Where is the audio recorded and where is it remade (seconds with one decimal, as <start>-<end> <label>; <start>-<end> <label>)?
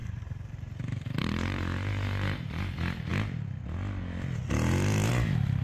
0.0-2.6 remade; 2.6-5.6 recorded